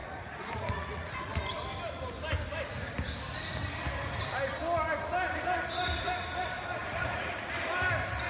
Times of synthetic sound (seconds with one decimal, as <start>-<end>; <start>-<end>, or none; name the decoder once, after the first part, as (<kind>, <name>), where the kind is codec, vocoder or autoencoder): 0.0-1.4 (vocoder, Vocos); 6.8-7.5